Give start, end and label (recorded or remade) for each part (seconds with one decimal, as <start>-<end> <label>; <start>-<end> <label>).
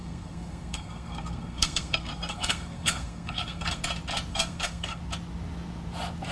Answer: 0.0-3.8 remade; 3.8-4.3 recorded; 4.3-5.0 remade; 5.0-6.3 recorded